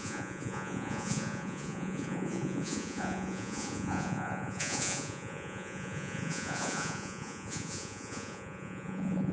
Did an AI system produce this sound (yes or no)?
yes